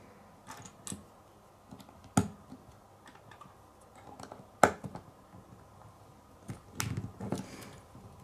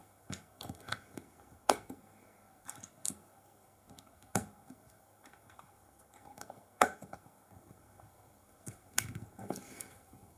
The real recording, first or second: first